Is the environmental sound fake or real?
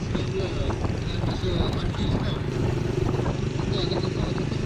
fake